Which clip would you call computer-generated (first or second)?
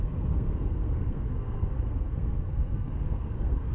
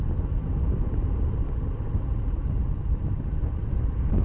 first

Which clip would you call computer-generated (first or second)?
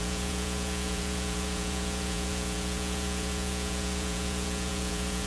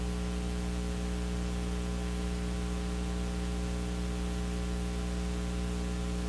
first